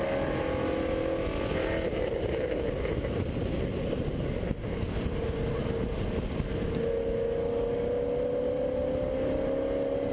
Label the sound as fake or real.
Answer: real